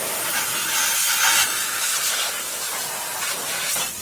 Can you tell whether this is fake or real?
real